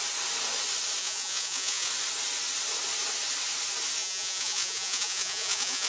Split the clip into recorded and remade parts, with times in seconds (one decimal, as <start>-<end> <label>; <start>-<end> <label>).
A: 0.0-1.0 recorded; 1.0-1.9 remade; 1.9-4.0 recorded; 4.0-5.9 remade